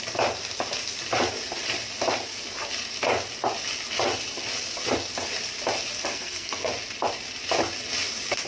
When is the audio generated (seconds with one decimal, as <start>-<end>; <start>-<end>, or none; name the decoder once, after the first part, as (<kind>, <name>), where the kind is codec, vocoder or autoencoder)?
6.1-6.7 (codec, SNAC)